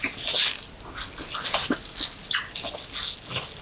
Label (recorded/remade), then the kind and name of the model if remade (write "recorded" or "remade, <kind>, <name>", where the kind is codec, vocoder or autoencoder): recorded